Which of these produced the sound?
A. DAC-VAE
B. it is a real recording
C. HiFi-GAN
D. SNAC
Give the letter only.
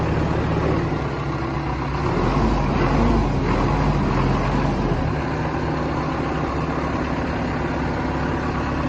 B